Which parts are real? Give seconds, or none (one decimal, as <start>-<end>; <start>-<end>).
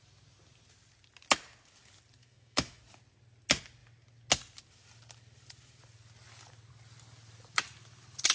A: 0.0-2.2; 2.8-8.3